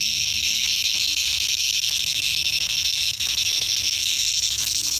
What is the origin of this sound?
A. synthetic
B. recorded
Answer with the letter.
A